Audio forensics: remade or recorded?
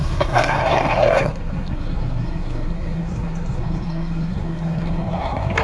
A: remade